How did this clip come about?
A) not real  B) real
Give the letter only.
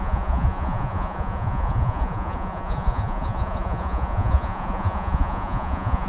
A